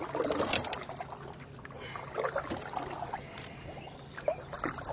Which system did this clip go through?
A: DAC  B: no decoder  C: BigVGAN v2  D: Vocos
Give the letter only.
B